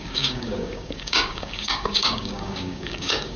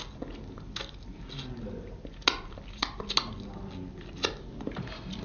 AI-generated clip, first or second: first